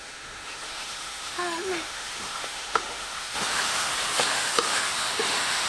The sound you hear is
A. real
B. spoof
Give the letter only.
B